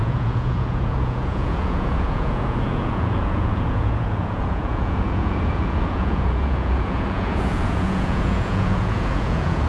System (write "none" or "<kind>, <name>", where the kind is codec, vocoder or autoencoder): vocoder, Vocos